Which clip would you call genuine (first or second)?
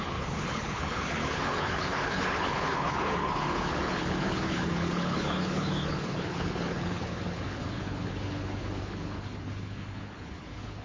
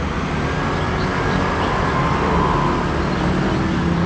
second